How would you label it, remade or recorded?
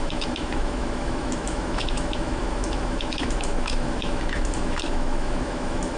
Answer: remade